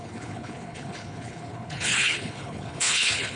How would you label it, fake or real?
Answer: fake